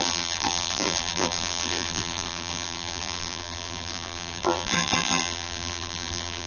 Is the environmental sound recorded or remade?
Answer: remade